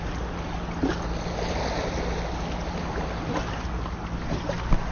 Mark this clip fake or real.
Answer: real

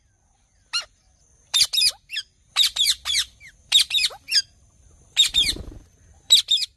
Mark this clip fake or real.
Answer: fake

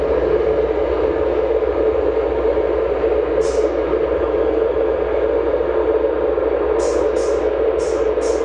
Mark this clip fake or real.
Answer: real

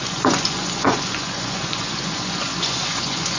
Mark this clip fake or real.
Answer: fake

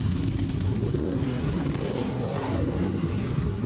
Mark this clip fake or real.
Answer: fake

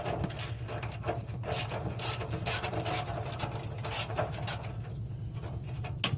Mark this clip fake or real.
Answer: real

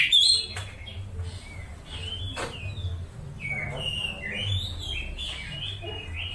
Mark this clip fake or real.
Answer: real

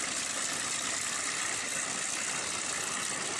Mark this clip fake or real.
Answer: real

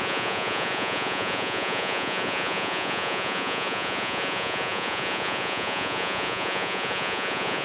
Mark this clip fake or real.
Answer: fake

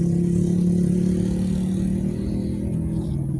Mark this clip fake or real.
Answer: real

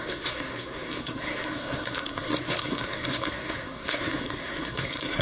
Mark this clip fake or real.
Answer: fake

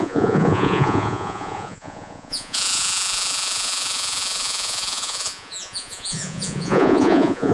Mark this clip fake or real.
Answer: fake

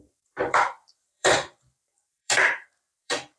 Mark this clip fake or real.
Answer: fake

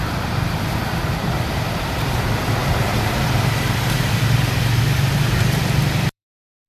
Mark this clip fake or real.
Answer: fake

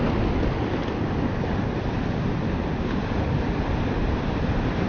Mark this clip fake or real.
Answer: real